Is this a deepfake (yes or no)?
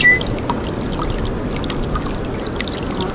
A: no